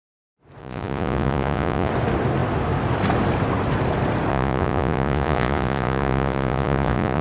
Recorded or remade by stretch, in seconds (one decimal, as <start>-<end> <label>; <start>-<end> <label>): 0.0-0.6 recorded; 0.6-1.9 remade; 1.9-4.3 recorded; 4.3-7.2 remade